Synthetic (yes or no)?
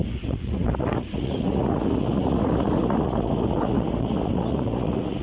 yes